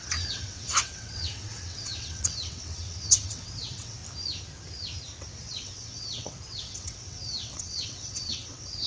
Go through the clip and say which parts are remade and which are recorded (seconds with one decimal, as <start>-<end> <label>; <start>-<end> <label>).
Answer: 0.0-4.0 remade; 4.0-5.4 recorded; 5.4-8.9 remade